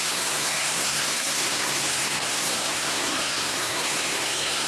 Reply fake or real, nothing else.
fake